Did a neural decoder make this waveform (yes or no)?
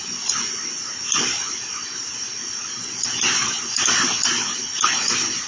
yes